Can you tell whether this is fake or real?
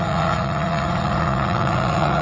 fake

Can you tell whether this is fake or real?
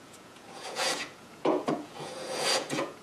fake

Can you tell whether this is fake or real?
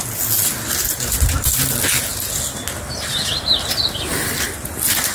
real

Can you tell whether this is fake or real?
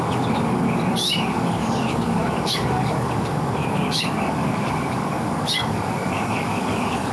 fake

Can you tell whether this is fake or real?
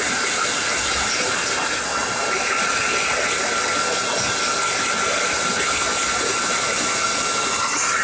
real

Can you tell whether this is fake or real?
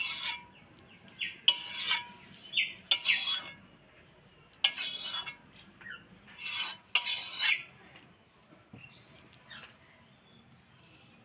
real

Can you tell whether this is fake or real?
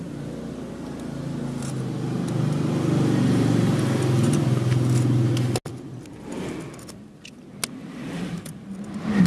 real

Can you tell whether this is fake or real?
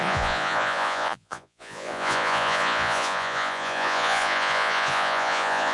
fake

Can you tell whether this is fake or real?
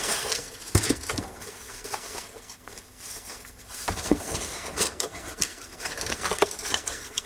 fake